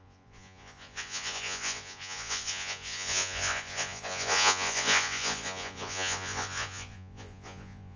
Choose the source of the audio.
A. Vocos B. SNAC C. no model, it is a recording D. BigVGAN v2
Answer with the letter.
A